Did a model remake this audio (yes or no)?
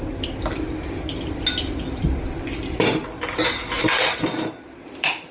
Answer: no